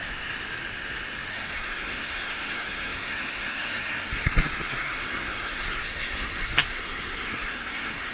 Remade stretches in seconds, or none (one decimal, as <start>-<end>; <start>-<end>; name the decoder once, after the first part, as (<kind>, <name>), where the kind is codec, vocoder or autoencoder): 1.3-8.1 (codec, SNAC)

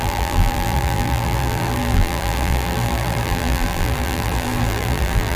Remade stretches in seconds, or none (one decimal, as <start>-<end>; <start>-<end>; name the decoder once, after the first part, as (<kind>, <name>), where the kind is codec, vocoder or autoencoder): 0.0-5.4 (vocoder, BigVGAN v2)